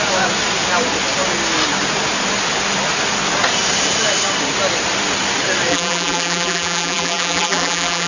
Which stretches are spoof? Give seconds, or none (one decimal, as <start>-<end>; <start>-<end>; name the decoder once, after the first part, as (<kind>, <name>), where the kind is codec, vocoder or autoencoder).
5.7-8.1 (vocoder, BigVGAN v2)